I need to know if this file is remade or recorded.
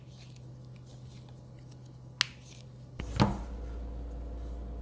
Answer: recorded